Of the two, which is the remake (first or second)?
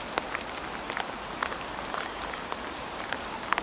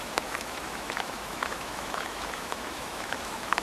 second